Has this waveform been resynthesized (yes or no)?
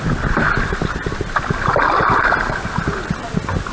no